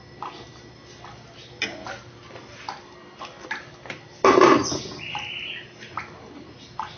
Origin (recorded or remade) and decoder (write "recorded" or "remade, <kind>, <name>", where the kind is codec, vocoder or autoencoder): recorded